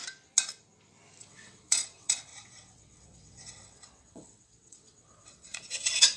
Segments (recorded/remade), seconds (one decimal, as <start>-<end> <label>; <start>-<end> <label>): 0.0-1.2 recorded; 1.2-6.2 remade